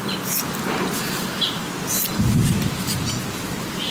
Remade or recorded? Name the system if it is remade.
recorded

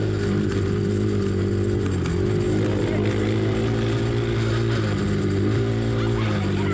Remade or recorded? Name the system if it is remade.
recorded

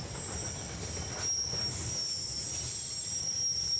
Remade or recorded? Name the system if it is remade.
recorded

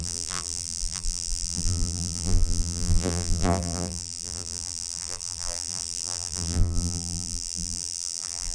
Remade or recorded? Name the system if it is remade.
remade, vocoder, BigVGAN v2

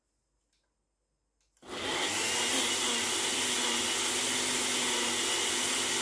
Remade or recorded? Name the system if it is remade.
recorded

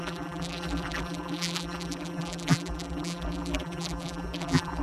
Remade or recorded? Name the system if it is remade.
remade, vocoder, BigVGAN v2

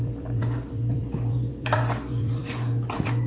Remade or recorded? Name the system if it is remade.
remade, vocoder, BigVGAN v2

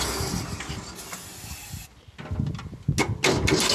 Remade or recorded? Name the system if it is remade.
recorded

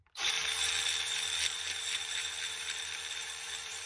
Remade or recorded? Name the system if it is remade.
remade, vocoder, BigVGAN v2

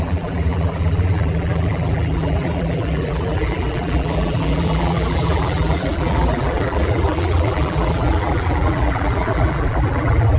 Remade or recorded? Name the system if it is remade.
remade, vocoder, BigVGAN v2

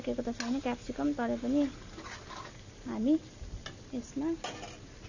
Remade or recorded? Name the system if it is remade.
recorded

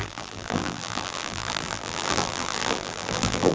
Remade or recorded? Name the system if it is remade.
remade, vocoder, BigVGAN v2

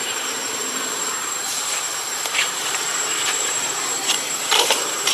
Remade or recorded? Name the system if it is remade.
remade, vocoder, BigVGAN v2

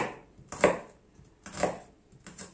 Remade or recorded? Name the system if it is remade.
recorded